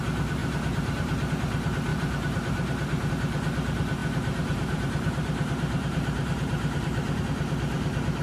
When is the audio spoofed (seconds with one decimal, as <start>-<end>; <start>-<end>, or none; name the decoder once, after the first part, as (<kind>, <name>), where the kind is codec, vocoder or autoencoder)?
0.4-1.3 (vocoder, BigVGAN v2); 1.9-3.1; 4.0-7.2

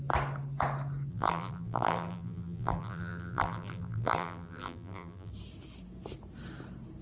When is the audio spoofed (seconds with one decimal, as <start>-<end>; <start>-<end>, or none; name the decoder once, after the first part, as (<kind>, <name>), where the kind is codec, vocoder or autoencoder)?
1.1-5.3 (vocoder, BigVGAN v2)